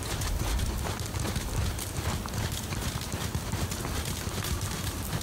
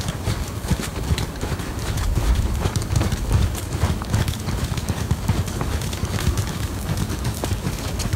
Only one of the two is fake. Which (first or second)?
second